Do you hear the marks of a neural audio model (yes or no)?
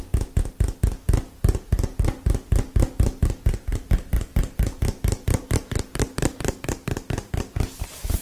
no